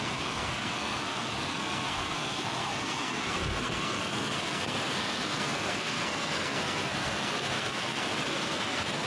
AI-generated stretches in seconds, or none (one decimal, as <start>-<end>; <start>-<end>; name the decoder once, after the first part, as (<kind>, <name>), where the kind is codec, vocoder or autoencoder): 0.0-9.1 (codec, SNAC)